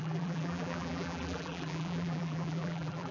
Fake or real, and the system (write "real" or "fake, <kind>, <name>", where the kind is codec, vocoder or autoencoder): fake, vocoder, BigVGAN v2